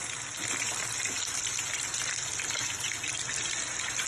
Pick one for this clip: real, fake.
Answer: real